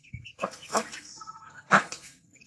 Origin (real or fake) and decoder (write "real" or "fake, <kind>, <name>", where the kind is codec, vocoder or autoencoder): fake, codec, SNAC